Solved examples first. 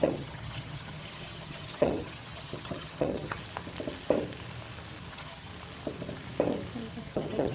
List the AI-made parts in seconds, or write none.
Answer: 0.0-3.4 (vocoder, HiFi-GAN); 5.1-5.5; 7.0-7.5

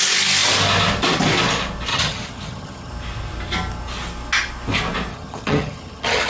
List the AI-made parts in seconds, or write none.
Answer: 1.9-2.9 (vocoder, HiFi-GAN); 5.1-6.3

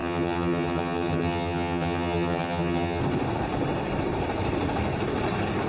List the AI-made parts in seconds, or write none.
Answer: 0.0-3.0 (vocoder, HiFi-GAN)

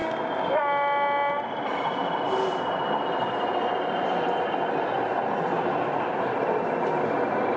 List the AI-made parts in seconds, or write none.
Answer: none

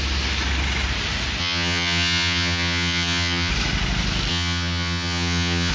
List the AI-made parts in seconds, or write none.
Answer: 1.4-3.5 (vocoder, HiFi-GAN); 4.3-5.7